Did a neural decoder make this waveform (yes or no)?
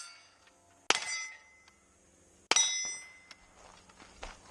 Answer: no